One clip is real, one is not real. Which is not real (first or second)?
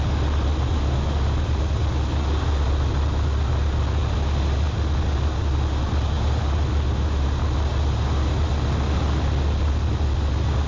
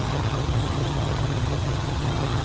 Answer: second